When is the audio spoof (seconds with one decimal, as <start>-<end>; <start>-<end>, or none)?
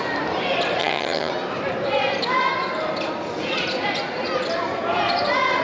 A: 0.8-1.3